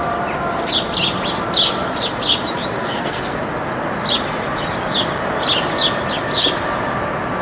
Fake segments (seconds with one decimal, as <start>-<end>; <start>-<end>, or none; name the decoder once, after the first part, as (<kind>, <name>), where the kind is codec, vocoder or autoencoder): 2.8-3.4 (codec, SNAC)